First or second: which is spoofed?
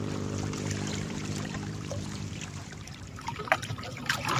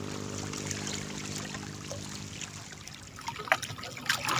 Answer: first